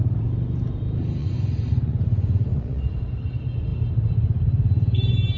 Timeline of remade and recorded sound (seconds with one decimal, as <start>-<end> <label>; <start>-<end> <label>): 0.0-1.2 recorded; 1.2-3.0 remade; 3.0-5.4 recorded